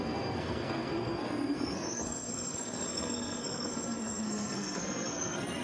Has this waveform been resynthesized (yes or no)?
yes